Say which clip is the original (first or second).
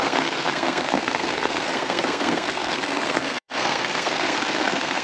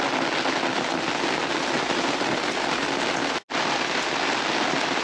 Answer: second